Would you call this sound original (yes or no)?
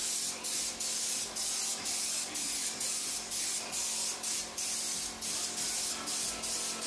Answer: yes